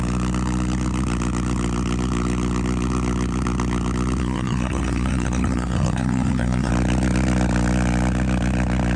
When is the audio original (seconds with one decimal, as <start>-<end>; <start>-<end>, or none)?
0.0-4.2; 6.7-9.0